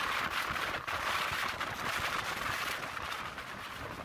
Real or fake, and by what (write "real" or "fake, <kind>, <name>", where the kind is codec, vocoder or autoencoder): real